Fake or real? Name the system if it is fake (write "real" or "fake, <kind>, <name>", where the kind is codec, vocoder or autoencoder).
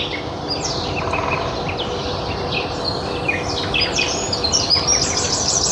fake, vocoder, BigVGAN v2